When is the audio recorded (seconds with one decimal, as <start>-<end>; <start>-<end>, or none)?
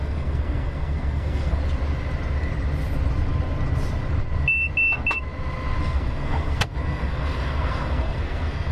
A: 1.6-5.8